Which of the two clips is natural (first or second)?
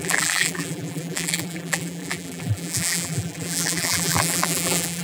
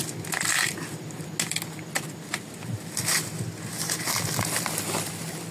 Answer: second